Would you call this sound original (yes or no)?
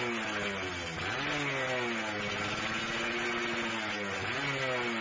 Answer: yes